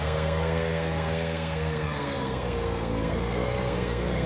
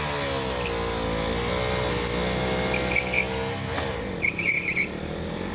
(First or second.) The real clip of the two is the second